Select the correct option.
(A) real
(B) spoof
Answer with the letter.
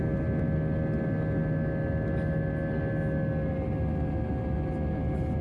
A